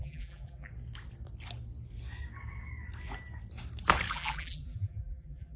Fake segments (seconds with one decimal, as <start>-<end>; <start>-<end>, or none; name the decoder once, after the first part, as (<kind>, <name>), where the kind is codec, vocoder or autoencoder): 0.0-0.7 (vocoder, BigVGAN v2); 4.1-5.6